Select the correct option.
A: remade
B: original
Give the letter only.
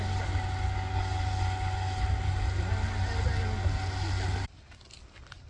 B